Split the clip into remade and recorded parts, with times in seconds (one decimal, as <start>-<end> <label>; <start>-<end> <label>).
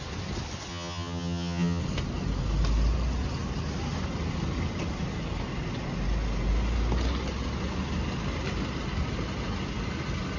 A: 0.0-0.7 recorded; 0.7-1.8 remade; 1.8-10.4 recorded